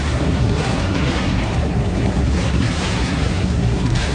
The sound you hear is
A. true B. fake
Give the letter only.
B